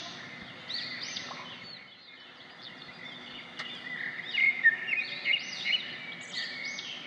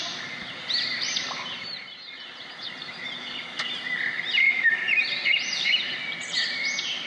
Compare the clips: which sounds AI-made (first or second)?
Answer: second